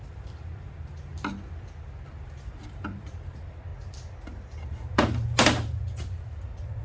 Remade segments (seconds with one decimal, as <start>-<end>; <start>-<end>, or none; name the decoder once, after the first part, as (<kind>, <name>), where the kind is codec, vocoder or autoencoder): 0.0-1.1 (vocoder, BigVGAN v2); 2.1-3.7; 4.7-6.8